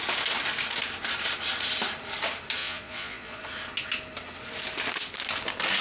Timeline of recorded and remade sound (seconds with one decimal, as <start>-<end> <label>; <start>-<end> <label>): 0.0-2.6 recorded; 2.6-3.4 remade; 3.4-5.8 recorded